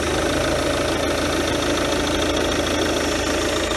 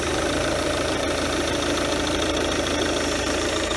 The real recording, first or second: first